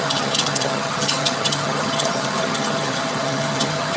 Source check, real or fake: fake